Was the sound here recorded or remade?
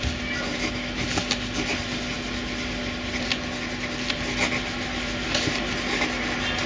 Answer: recorded